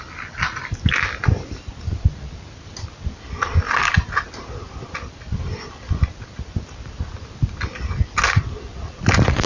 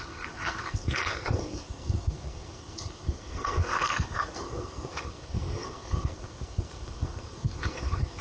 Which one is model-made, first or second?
second